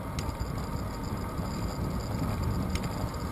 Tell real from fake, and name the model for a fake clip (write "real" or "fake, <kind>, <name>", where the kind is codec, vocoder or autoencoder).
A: real